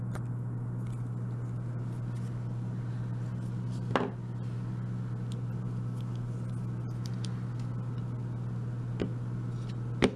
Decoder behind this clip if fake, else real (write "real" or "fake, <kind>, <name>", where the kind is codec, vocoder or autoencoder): real